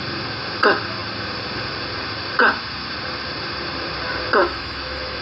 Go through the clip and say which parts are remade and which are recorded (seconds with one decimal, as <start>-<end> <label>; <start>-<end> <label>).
0.0-4.4 recorded; 4.4-5.2 remade